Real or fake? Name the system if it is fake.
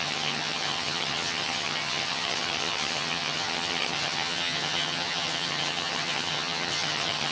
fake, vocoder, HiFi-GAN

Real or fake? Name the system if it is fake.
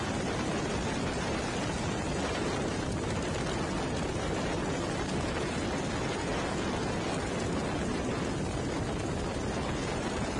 real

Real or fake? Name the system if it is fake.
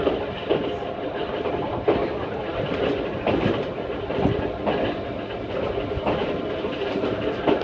real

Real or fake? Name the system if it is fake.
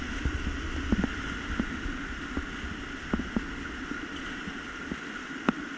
real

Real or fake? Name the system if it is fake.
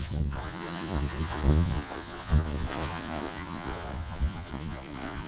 fake, vocoder, Vocos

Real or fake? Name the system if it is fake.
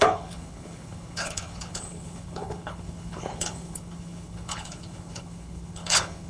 fake, codec, HILCodec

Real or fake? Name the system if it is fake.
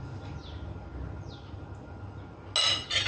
real